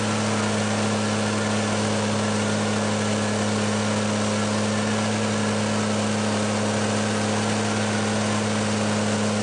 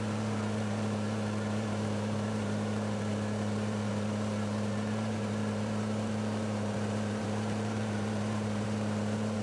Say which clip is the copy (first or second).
second